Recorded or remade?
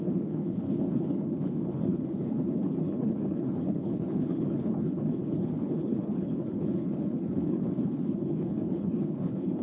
remade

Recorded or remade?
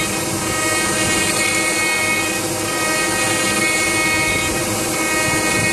recorded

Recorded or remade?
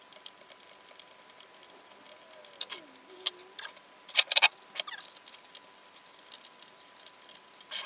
recorded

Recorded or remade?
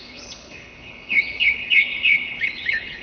remade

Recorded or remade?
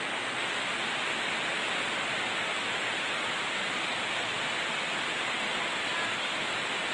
recorded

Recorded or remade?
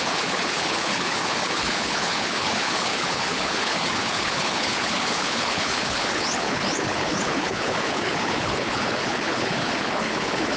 remade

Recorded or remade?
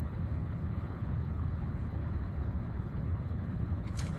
remade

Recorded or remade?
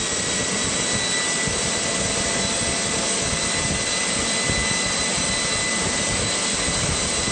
recorded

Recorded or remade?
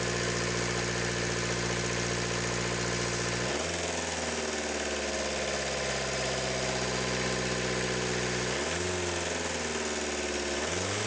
recorded